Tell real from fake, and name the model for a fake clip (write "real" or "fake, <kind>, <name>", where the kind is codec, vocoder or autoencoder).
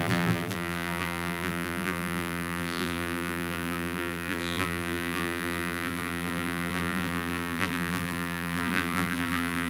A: fake, vocoder, BigVGAN v2